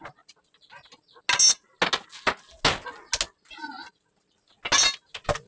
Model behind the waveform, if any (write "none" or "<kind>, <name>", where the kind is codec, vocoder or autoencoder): none